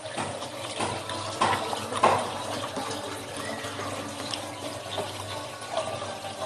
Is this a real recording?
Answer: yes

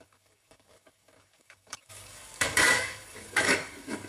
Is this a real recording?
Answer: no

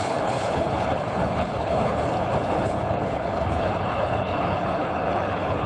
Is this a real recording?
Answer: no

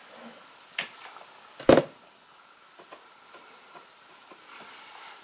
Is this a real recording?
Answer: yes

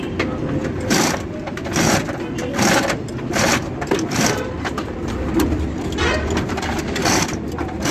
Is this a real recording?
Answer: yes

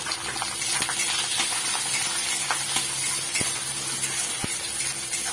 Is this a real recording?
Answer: yes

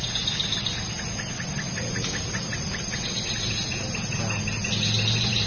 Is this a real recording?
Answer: yes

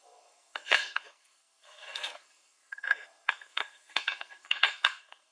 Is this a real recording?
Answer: no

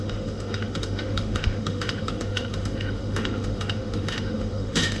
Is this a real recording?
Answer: no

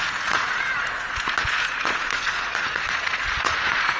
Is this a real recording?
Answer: no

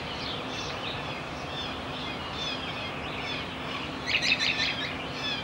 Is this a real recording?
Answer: no